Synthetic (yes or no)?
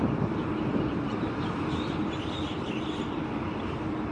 yes